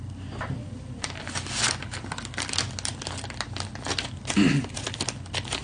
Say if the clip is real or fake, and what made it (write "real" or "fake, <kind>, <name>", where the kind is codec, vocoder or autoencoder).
real